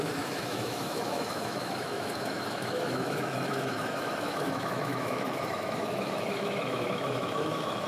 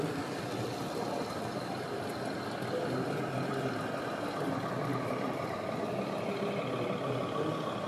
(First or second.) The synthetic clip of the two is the first